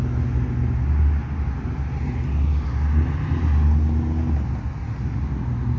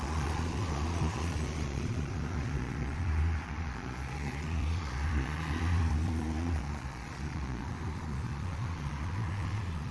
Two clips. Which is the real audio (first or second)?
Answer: first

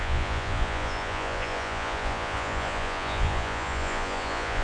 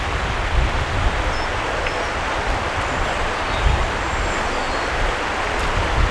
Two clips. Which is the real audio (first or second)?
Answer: second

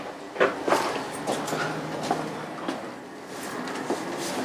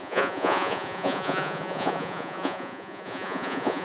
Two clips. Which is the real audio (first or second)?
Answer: first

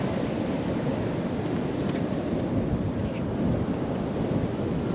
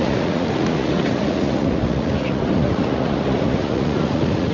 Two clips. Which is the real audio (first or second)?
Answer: first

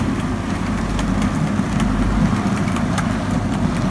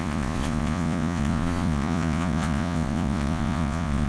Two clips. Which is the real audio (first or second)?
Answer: first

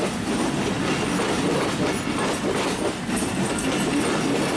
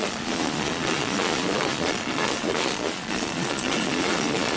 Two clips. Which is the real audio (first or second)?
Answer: first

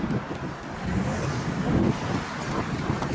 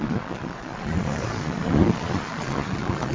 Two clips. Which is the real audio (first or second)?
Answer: first